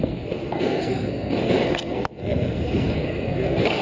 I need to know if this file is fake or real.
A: fake